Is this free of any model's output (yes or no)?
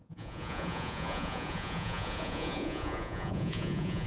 no